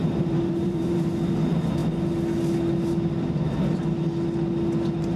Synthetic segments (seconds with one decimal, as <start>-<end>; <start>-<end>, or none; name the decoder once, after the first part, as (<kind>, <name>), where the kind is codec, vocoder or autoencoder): 0.0-1.0 (vocoder, BigVGAN v2)